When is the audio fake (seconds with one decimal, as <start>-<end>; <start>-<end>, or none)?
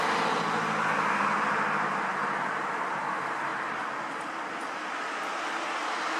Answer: none